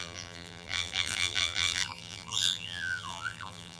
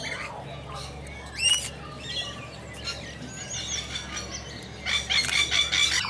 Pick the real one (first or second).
second